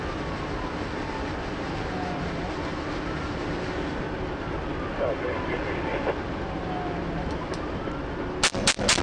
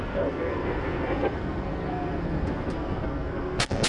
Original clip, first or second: first